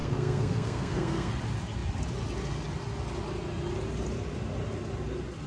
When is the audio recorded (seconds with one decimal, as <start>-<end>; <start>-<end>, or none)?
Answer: 1.3-5.5